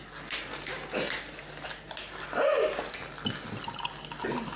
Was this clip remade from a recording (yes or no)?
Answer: no